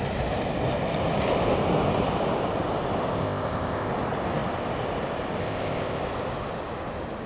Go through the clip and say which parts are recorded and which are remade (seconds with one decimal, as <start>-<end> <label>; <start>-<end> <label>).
0.0-3.1 recorded; 3.1-3.9 remade; 3.9-5.4 recorded; 5.4-6.0 remade; 6.0-7.3 recorded